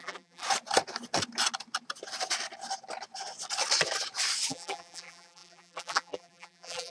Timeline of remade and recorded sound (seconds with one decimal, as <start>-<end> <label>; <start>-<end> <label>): 0.0-0.4 remade; 0.4-4.5 recorded; 4.5-6.9 remade